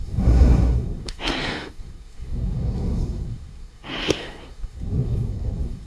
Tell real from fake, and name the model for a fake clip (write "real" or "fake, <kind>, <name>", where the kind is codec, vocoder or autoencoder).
fake, codec, SNAC